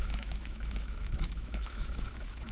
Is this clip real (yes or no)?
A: no